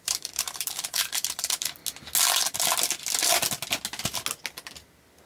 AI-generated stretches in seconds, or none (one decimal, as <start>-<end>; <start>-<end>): 0.0-1.8